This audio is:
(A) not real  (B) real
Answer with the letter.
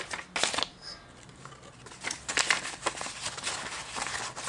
B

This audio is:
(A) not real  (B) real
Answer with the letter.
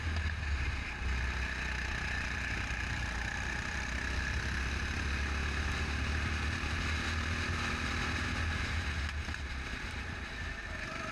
B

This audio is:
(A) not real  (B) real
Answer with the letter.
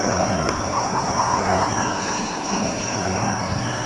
A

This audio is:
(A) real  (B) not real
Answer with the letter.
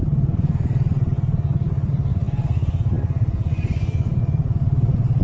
A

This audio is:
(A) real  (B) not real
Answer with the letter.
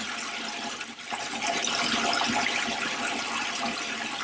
A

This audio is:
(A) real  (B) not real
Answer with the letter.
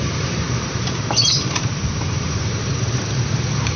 B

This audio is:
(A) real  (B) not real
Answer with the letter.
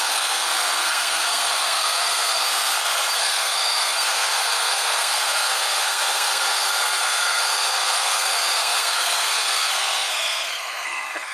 B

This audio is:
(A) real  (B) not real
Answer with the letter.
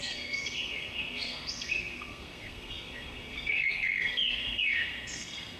B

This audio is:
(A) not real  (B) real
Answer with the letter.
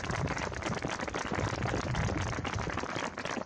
B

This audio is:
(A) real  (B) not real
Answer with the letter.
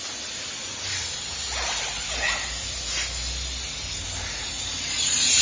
A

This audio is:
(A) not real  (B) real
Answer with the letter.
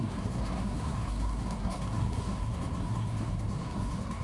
A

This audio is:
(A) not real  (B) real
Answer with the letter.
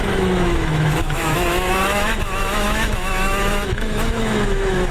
A